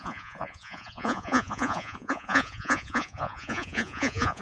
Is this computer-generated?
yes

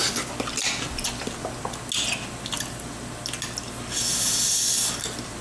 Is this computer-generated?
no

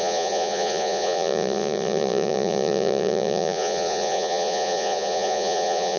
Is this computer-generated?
yes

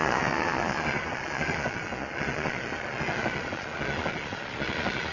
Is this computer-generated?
yes